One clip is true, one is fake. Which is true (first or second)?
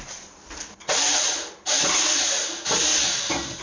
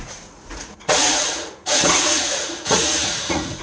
first